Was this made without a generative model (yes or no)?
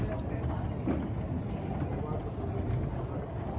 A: yes